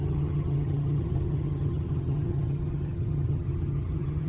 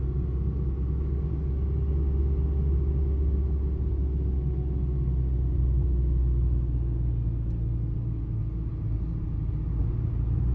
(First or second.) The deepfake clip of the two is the first